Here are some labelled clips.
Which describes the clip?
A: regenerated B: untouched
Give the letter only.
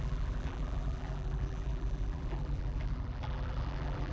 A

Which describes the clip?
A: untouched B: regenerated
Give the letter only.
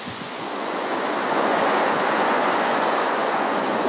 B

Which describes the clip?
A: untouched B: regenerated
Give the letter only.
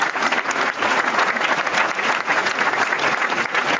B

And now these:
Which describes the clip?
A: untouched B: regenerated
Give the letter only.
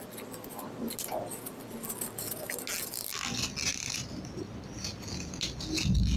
A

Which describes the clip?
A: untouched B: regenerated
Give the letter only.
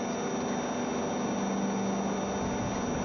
A